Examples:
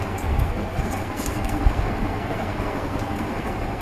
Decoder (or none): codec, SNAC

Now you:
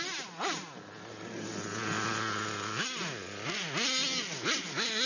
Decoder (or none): none